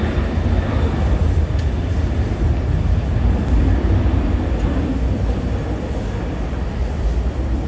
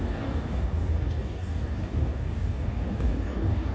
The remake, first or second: second